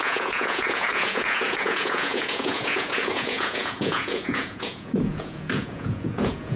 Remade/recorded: remade